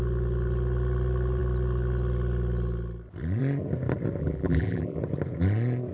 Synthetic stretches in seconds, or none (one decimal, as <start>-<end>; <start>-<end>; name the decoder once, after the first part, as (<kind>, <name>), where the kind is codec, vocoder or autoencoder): 4.2-5.0 (vocoder, BigVGAN v2)